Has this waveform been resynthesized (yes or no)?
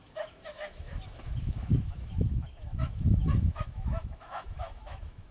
yes